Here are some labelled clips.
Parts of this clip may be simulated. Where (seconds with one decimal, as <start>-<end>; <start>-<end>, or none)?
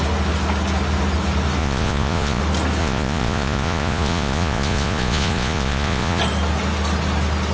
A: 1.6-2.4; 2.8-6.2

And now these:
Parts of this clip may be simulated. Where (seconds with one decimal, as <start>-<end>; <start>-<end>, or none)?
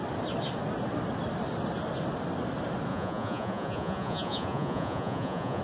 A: 2.9-5.6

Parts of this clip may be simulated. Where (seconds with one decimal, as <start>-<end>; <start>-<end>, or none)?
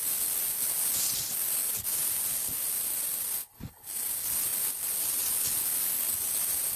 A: none